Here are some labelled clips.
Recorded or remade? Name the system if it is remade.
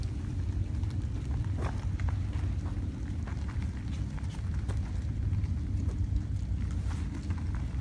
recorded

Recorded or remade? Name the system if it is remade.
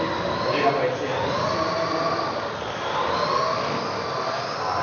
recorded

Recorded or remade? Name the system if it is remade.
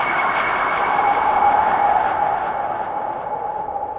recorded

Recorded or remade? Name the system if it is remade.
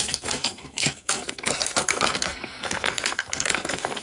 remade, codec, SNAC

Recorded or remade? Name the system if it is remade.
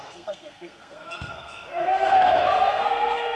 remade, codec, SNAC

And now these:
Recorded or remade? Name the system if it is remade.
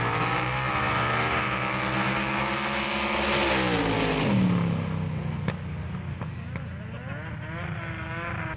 recorded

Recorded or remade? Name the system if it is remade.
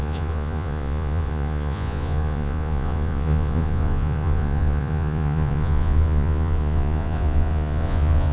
remade, vocoder, Vocos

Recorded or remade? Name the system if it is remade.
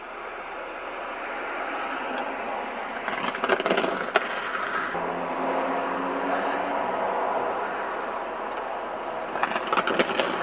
recorded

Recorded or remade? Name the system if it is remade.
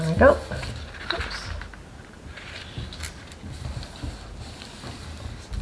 recorded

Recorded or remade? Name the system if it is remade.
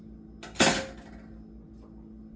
recorded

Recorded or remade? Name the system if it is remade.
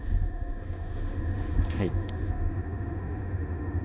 remade, autoencoder, DAC-VAE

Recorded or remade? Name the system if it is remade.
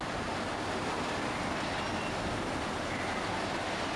recorded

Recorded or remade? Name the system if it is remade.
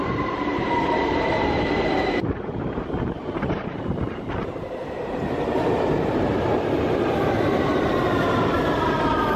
remade, vocoder, BigVGAN v2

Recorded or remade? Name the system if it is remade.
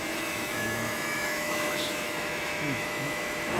remade, autoencoder, DAC-VAE